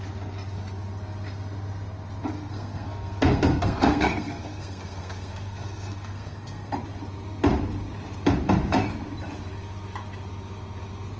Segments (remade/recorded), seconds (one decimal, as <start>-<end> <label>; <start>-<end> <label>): 0.0-2.4 recorded; 2.4-6.7 remade; 6.7-11.2 recorded